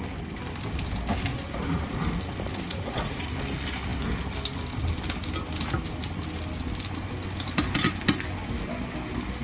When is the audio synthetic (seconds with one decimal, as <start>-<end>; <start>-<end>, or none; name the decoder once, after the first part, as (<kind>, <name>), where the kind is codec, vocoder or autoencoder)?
1.3-2.0 (vocoder, Vocos); 2.5-3.3